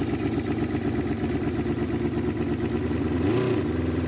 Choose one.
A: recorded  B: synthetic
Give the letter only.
A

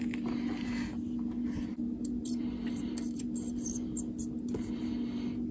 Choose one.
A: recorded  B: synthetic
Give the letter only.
A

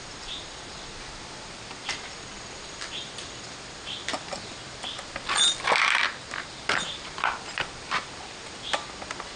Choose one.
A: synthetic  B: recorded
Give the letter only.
B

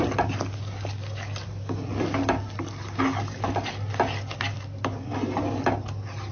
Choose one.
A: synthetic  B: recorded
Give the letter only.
B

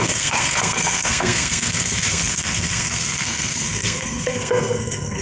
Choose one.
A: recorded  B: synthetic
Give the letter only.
B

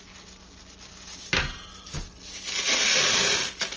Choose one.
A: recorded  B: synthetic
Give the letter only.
A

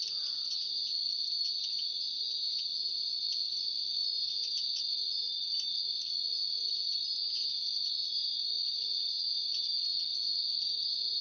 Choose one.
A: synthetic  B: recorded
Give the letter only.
B